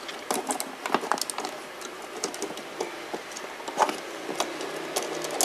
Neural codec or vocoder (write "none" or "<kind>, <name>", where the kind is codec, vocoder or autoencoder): none